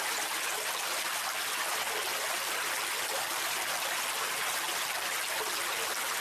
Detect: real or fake real